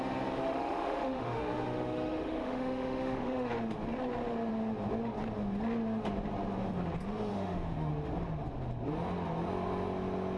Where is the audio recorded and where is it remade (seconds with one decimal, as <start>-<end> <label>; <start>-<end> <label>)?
0.0-0.4 recorded; 0.4-3.5 remade; 3.5-7.3 recorded; 7.3-7.9 remade; 7.9-10.4 recorded